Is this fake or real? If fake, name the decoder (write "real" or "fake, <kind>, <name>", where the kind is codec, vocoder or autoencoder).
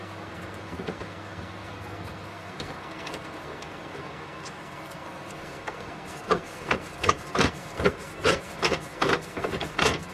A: fake, codec, SNAC